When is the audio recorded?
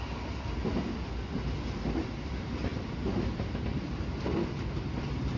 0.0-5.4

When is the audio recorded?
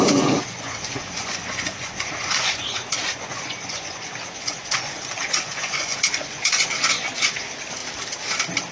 7.8-8.7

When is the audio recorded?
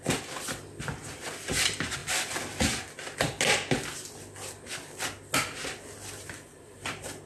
0.0-7.3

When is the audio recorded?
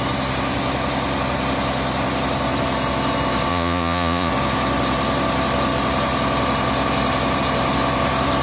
0.0-3.5; 4.3-8.4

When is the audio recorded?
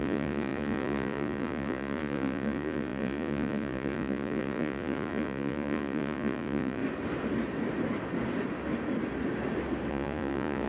6.8-9.9